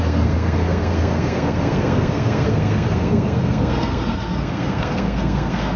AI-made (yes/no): yes